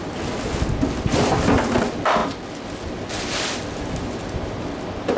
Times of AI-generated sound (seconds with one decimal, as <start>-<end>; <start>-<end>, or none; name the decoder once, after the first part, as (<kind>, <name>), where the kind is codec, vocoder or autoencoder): none